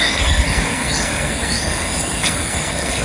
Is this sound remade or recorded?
remade